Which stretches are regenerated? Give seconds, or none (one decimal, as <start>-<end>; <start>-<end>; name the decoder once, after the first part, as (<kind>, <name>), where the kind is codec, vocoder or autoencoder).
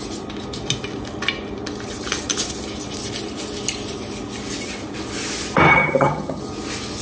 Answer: 5.7-6.4 (vocoder, HiFi-GAN)